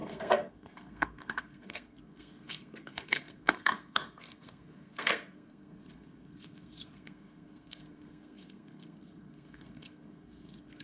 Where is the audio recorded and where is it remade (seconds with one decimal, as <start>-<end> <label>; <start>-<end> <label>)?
0.0-10.8 remade